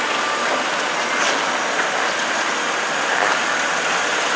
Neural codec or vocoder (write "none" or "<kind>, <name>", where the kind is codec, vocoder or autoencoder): none